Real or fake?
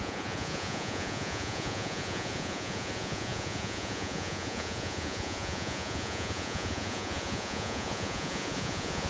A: fake